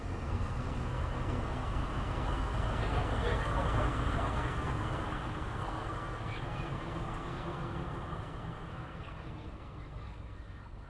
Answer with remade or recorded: remade